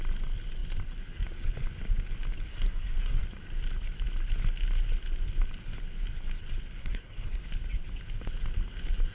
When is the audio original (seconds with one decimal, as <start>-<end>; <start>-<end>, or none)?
0.0-2.5; 3.2-6.8; 7.4-9.1